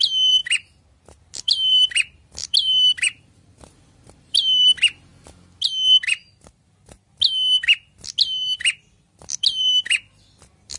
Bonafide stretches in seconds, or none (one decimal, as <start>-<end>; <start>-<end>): 0.4-1.2; 5.1-8.7